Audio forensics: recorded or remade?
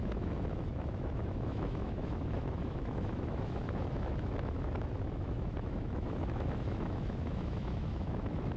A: remade